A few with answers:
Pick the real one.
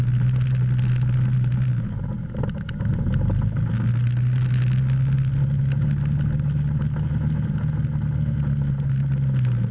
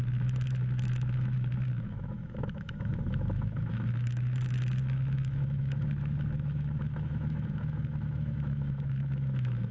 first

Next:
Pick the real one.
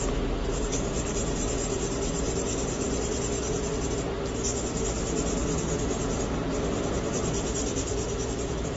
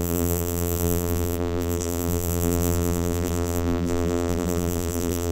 first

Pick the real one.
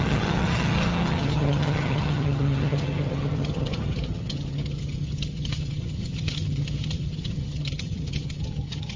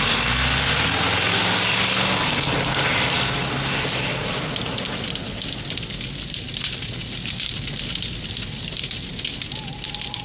second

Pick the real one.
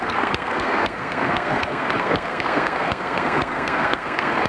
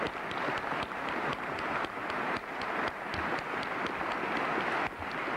second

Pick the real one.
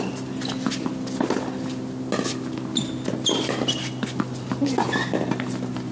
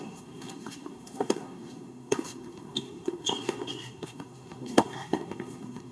first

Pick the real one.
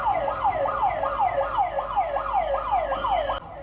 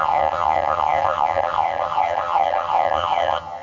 first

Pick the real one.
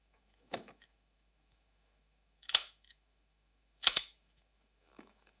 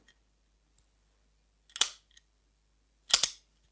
second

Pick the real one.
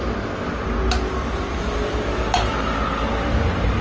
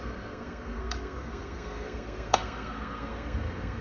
first